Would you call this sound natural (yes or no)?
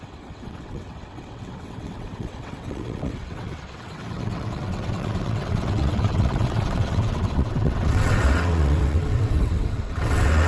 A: no